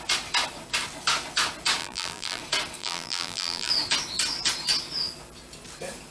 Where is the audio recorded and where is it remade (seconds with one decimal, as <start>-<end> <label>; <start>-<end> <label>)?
0.0-1.8 recorded; 1.8-2.4 remade; 2.4-2.8 recorded; 2.8-3.7 remade; 3.7-6.1 recorded